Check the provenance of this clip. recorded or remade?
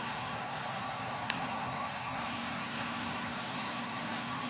remade